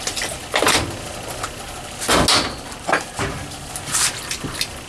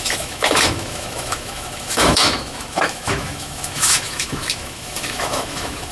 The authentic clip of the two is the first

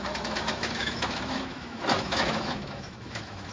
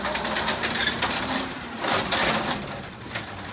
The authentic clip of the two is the second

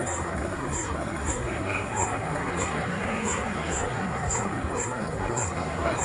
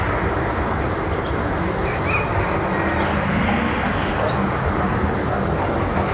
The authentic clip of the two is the second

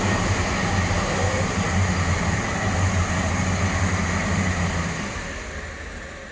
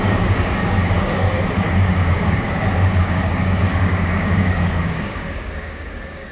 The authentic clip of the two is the first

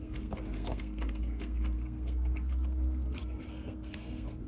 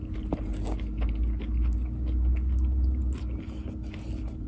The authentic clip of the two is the second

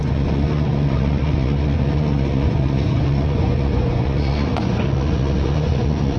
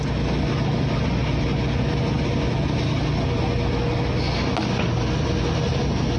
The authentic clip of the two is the second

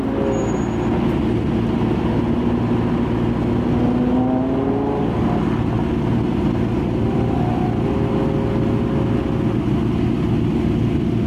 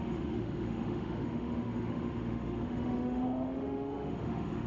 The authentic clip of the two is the first